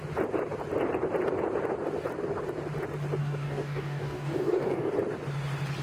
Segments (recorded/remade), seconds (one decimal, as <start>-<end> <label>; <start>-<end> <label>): 0.0-3.2 recorded; 3.2-4.9 remade; 4.9-5.8 recorded